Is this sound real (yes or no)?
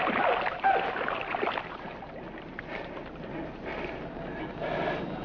yes